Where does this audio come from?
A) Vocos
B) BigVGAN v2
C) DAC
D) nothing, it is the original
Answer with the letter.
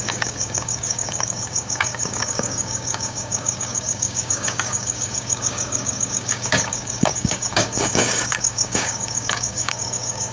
C